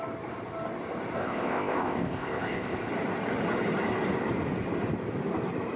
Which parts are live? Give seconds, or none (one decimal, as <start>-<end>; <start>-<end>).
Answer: 0.0-1.2; 2.9-5.8